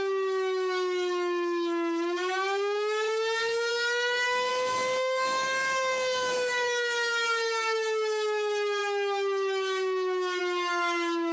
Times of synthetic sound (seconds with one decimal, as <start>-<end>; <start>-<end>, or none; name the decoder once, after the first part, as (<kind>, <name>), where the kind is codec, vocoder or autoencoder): 0.0-11.3 (autoencoder, DAC-VAE)